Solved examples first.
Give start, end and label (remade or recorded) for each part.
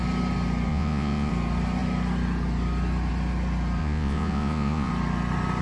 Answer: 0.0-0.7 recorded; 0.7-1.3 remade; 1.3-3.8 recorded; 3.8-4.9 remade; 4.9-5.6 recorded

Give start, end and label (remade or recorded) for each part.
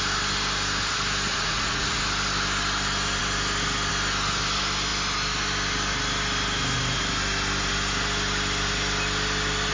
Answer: 0.0-1.3 recorded; 1.3-2.0 remade; 2.0-9.7 recorded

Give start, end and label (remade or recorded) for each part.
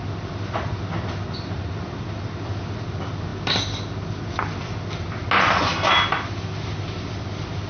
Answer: 0.0-7.7 recorded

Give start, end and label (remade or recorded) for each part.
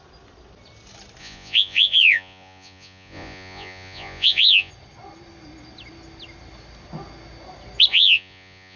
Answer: 0.0-1.2 recorded; 1.2-4.7 remade; 4.7-7.9 recorded; 7.9-8.8 remade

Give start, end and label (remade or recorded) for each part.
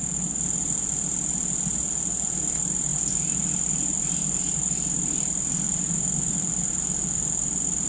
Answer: 0.0-7.9 recorded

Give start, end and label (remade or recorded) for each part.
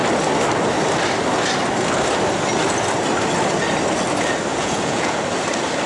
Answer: 0.0-4.5 recorded; 4.5-5.2 remade; 5.2-5.9 recorded